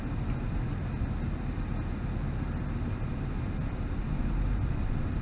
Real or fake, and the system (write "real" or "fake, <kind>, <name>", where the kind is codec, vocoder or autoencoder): real